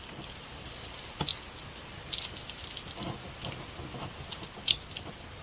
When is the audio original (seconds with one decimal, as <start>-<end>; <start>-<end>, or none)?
0.0-5.4